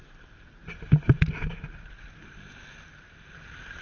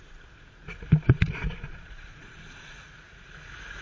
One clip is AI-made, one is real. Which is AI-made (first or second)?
second